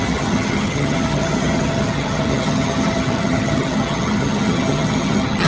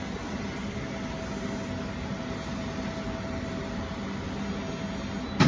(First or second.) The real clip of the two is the second